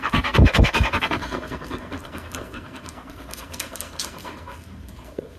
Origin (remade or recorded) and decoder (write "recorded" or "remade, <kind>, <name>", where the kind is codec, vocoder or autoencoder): remade, codec, SNAC